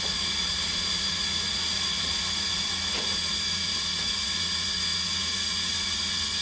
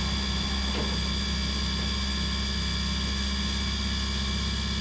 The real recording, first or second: second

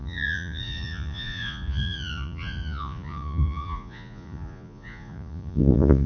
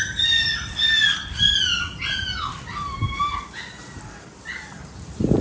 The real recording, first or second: second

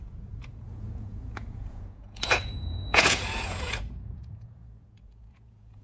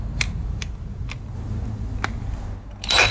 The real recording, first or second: second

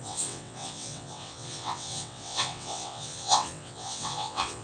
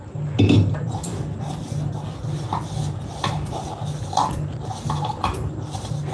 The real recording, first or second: second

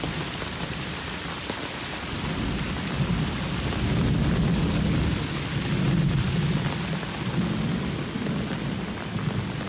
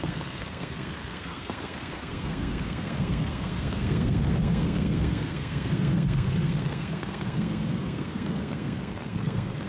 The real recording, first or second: first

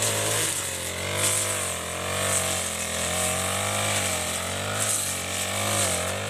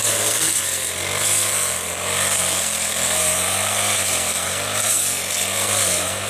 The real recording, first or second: first